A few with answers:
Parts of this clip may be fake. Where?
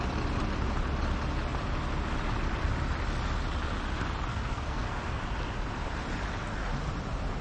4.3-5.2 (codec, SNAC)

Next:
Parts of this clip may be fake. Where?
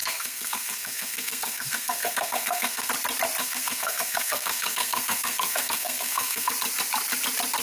0.0-2.9 (codec, SNAC); 3.4-6.5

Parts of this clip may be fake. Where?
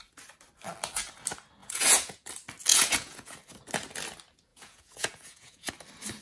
1.6-2.3 (vocoder, Vocos); 2.7-3.4; 4.5-5.7